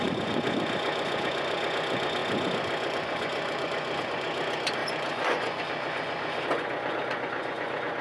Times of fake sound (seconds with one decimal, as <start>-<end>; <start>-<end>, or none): 0.0-8.0